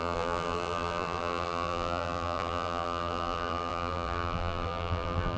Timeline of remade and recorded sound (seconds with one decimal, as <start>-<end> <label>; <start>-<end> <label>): 0.0-5.4 remade